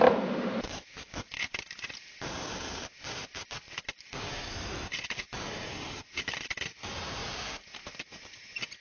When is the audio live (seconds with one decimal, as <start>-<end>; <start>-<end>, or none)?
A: 7.2-8.0